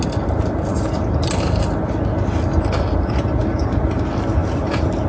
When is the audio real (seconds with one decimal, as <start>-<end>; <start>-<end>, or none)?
0.0-5.1